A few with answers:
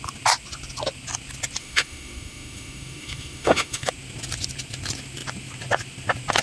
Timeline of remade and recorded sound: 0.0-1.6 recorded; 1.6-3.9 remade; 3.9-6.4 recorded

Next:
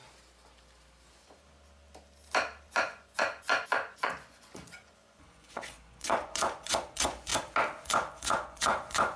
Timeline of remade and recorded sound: 0.0-2.7 recorded; 2.7-7.3 remade; 7.3-7.8 recorded; 7.8-9.2 remade

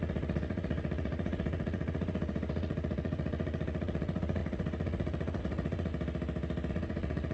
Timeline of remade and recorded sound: 0.0-5.9 remade; 5.9-6.7 recorded; 6.7-7.3 remade

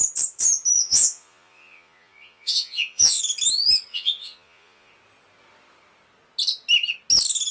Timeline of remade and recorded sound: 0.0-0.7 recorded; 0.7-3.2 remade; 3.2-3.9 recorded; 3.9-4.9 remade; 4.9-7.5 recorded